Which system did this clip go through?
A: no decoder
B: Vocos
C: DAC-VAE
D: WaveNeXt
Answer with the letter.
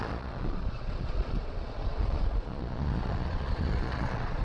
B